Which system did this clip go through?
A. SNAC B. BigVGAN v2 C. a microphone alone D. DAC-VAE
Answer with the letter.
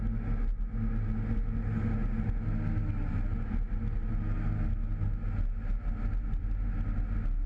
C